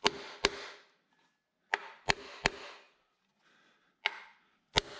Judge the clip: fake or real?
real